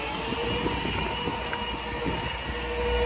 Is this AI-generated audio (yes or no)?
no